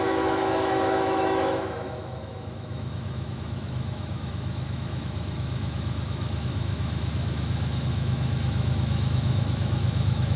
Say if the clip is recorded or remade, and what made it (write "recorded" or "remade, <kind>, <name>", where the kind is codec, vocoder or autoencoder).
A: remade, autoencoder, DAC-VAE